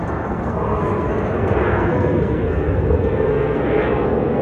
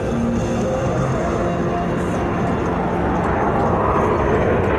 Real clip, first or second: second